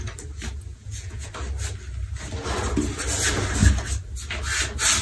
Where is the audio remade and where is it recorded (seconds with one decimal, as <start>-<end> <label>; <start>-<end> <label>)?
0.0-0.7 recorded; 0.7-1.3 remade; 1.3-5.0 recorded